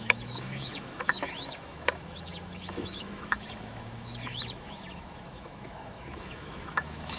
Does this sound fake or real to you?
fake